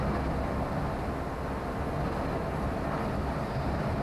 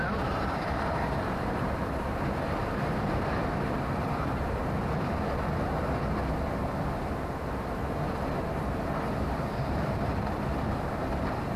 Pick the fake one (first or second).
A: second